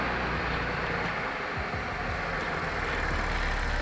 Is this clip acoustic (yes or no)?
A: yes